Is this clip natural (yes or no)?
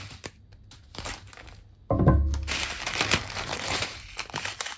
yes